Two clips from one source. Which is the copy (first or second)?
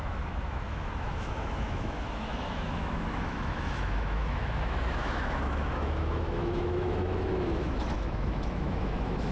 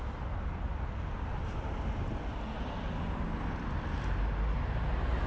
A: first